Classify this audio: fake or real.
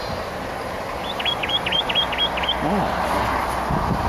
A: real